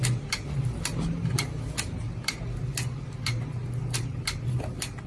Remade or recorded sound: recorded